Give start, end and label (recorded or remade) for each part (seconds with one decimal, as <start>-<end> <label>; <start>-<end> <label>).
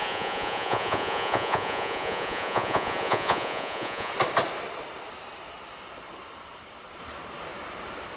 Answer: 0.0-4.1 remade; 4.1-8.2 recorded